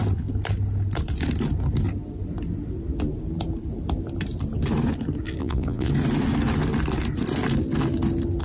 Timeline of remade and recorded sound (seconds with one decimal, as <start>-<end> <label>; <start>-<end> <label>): 0.0-5.4 recorded; 5.4-5.9 remade; 5.9-8.4 recorded